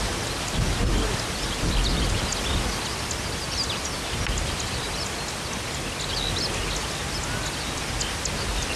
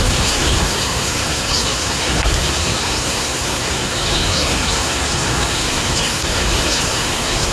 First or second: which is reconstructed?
second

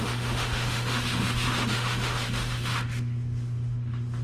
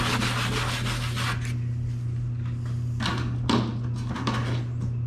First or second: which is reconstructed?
first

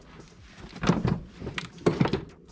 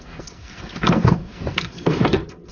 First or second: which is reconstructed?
second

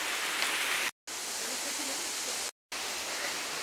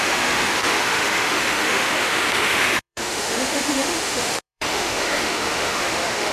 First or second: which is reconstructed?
second